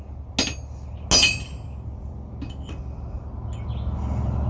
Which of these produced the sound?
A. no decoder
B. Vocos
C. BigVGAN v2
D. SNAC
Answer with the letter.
A